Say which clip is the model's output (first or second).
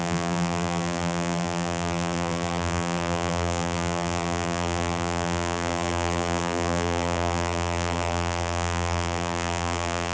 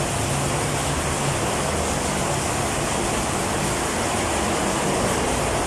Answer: first